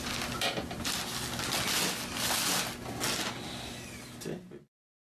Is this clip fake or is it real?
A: real